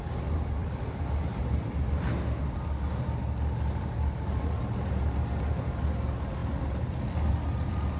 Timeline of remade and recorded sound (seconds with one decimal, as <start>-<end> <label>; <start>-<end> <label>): 0.0-8.0 recorded